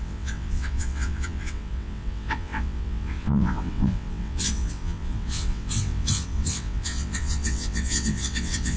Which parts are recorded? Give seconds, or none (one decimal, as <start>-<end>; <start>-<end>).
none